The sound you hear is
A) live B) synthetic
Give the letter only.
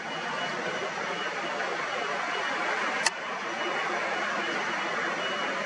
A